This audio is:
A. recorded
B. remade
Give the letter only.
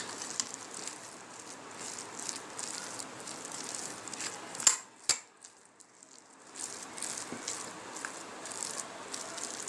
A